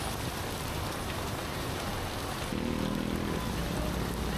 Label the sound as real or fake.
real